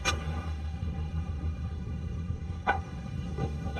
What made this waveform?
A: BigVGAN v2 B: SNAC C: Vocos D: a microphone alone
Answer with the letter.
B